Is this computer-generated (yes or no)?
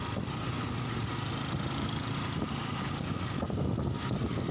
no